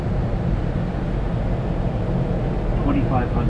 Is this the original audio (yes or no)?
yes